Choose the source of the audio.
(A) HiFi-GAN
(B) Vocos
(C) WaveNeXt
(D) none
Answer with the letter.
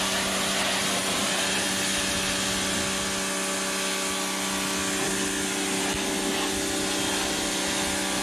D